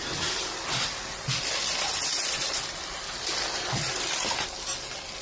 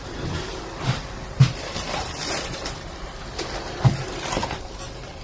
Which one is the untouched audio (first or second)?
first